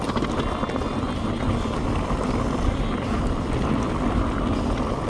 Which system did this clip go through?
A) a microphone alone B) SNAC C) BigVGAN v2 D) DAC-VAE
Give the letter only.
A